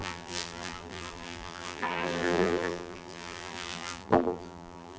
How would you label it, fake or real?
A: fake